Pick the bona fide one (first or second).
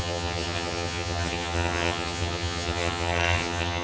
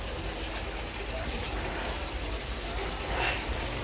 second